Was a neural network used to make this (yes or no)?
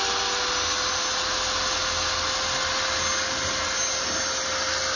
no